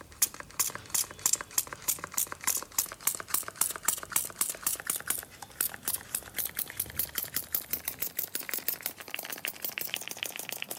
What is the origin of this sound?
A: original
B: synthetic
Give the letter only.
B